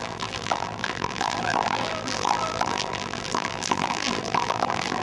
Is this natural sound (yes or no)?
no